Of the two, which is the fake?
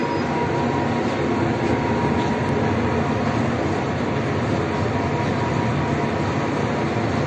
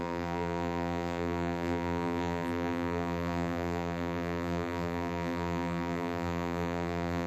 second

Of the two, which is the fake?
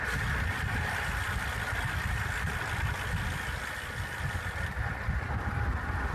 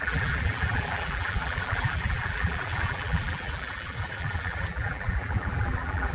second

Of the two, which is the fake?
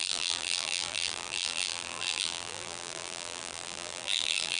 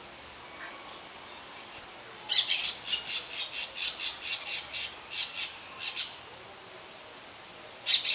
first